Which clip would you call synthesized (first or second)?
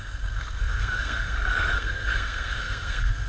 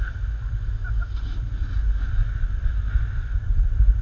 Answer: first